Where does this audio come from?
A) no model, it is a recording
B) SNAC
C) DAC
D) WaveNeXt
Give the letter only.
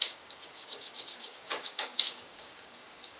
C